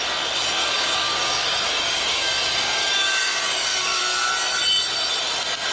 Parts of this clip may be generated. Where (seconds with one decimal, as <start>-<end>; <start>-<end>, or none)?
0.6-4.0